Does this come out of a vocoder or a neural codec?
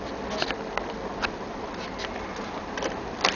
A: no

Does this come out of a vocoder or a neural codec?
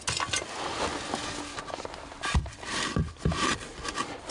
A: no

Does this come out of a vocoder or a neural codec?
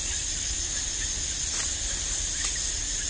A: no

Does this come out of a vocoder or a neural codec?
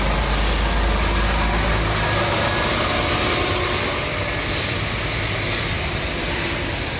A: no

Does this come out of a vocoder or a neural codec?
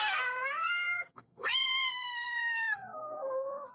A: yes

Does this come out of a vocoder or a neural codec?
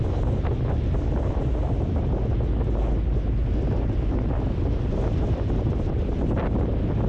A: no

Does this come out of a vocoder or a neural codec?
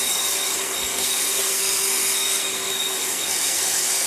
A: yes